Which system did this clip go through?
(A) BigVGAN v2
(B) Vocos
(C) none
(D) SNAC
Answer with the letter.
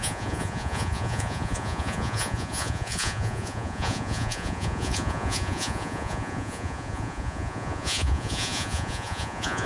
B